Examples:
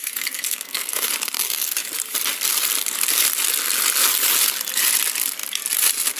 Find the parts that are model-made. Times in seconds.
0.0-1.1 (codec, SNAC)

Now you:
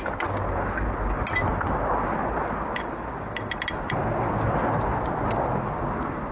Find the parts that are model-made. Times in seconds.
none

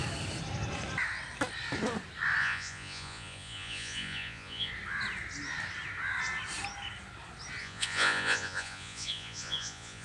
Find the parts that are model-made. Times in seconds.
2.4-4.7 (vocoder, Vocos); 7.6-10.0